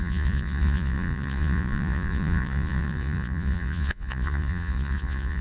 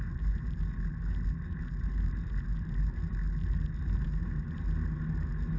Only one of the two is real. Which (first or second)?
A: second